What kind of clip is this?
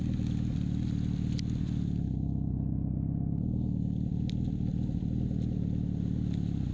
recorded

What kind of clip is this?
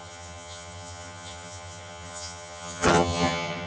remade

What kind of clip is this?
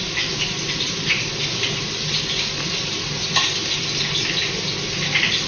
recorded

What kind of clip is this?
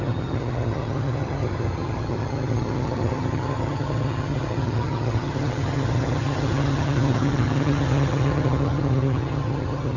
remade